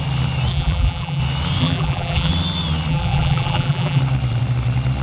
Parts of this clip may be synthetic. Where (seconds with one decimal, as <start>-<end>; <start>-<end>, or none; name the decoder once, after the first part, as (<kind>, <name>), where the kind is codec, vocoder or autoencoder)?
0.5-1.2 (vocoder, BigVGAN v2); 1.6-2.3; 2.9-4.0